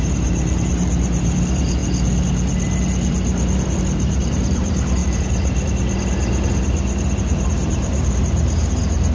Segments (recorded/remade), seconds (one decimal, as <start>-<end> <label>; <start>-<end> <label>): 0.0-1.8 remade; 1.8-3.8 recorded; 3.8-5.0 remade; 5.0-7.2 recorded; 7.2-9.1 remade